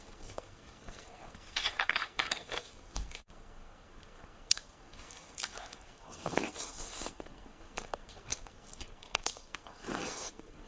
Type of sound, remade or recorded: remade